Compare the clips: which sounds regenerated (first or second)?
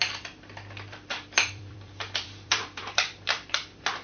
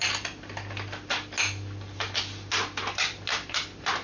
first